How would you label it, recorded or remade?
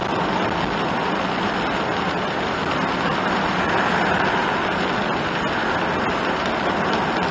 recorded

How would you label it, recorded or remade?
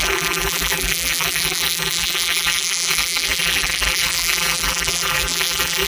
remade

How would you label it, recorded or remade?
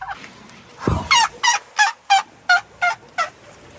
recorded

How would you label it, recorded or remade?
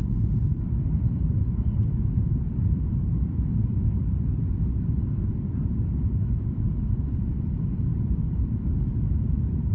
remade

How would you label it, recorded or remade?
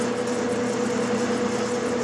recorded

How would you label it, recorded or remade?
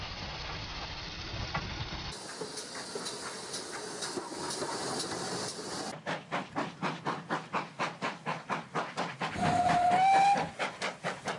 recorded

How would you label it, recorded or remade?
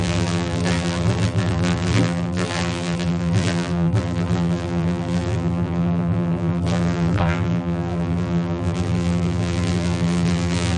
remade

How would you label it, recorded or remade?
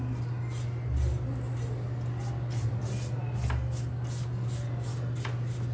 recorded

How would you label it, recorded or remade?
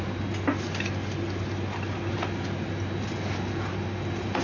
recorded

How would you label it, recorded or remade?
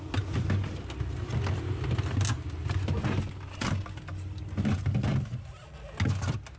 recorded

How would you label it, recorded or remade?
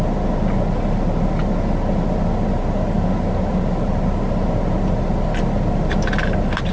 recorded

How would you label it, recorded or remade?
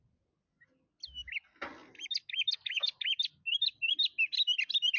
recorded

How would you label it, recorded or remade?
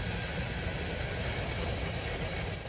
recorded